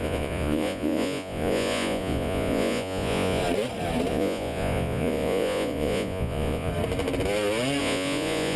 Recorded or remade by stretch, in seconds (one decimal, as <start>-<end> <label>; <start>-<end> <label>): 0.0-3.4 remade; 3.4-4.1 recorded; 4.1-6.7 remade; 6.7-7.8 recorded; 7.8-8.6 remade